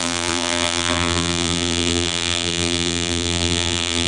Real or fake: fake